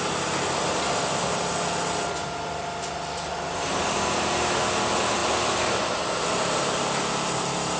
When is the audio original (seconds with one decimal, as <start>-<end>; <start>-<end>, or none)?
0.0-7.8